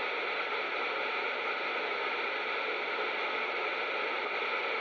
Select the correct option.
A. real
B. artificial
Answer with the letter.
A